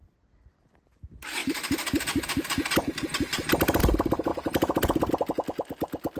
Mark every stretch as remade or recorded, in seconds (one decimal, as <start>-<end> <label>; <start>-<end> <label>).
0.0-4.3 recorded; 4.3-5.1 remade; 5.1-6.2 recorded